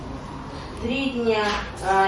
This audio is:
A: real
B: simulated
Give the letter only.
A